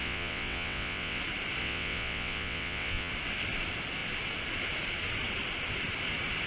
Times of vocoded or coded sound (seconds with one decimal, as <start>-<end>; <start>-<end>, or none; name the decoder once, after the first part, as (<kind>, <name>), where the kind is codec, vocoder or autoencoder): 0.0-1.2 (vocoder, WaveNeXt); 1.6-3.1